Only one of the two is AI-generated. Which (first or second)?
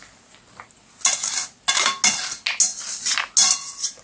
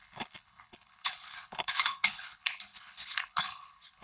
second